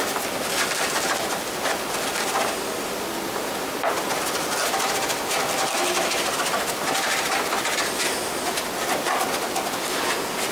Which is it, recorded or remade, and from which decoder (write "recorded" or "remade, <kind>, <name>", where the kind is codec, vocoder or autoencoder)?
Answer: recorded